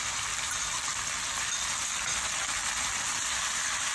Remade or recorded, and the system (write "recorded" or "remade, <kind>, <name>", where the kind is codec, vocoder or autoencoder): recorded